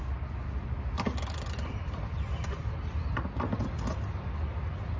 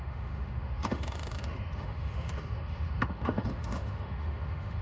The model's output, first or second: second